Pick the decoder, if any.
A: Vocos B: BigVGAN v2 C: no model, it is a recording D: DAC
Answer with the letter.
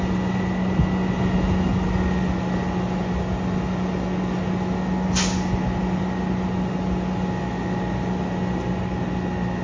C